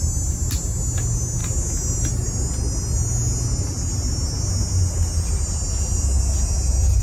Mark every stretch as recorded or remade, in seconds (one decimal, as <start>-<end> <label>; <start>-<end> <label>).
0.0-7.0 recorded